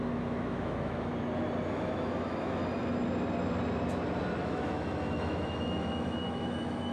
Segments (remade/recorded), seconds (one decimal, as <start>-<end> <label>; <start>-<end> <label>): 0.0-1.1 remade; 1.1-1.7 recorded; 1.7-2.6 remade; 2.6-4.4 recorded; 4.4-6.9 remade